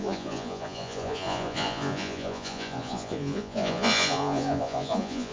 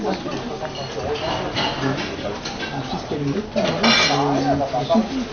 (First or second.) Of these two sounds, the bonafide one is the second